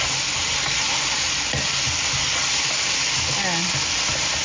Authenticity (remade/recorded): recorded